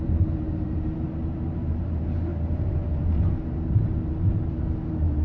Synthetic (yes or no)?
yes